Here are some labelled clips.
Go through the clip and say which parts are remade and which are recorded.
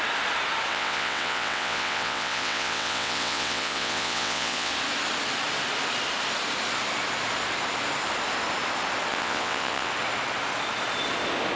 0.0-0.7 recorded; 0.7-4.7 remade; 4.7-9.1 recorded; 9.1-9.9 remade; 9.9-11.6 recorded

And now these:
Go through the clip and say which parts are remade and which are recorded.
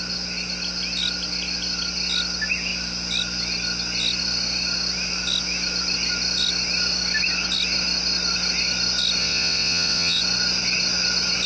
0.0-9.2 recorded; 9.2-10.2 remade; 10.2-11.5 recorded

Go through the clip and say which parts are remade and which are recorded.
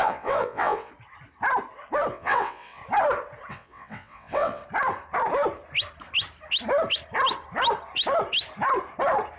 0.0-0.9 remade; 0.9-2.1 recorded; 2.1-2.8 remade; 2.8-3.5 recorded; 3.5-4.6 remade; 4.6-9.4 recorded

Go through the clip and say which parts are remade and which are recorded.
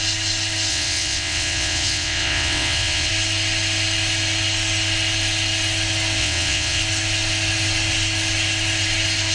0.0-0.7 recorded; 0.7-3.1 remade; 3.1-6.2 recorded; 6.2-6.8 remade; 6.8-9.3 recorded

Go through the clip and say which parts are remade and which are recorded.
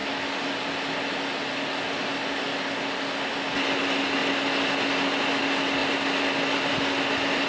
0.0-7.5 recorded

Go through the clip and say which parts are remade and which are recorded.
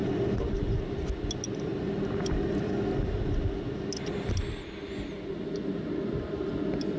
0.0-7.0 recorded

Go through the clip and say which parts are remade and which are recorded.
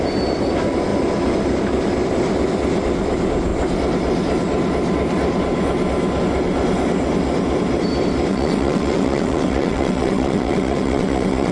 0.0-8.3 recorded; 8.3-11.5 remade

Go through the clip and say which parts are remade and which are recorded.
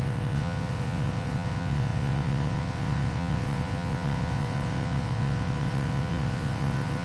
0.0-7.0 remade